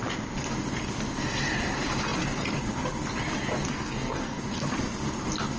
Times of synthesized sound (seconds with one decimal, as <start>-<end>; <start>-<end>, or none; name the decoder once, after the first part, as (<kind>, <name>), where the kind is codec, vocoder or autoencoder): 3.7-4.4 (codec, SNAC)